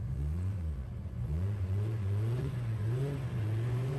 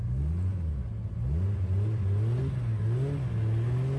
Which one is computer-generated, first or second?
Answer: first